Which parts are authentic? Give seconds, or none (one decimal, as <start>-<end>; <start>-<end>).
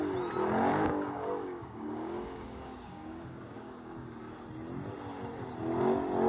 0.0-0.7; 4.3-6.3